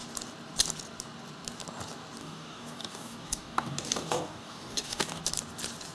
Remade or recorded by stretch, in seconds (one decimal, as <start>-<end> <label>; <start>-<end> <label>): 0.0-2.2 recorded; 2.2-5.2 remade; 5.2-5.9 recorded